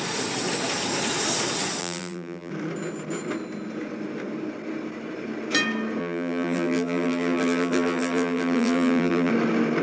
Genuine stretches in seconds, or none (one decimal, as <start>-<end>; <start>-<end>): 0.0-1.8; 2.5-6.0; 9.3-9.8